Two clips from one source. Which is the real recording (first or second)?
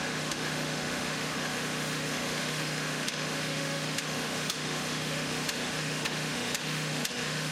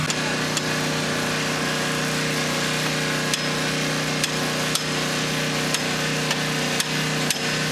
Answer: second